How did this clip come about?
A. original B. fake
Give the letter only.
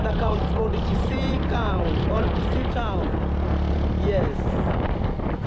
A